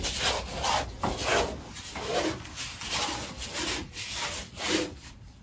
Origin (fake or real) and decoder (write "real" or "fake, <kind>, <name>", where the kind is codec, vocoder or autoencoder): real